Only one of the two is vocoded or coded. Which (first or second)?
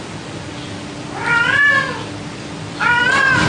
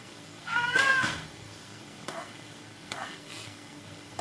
second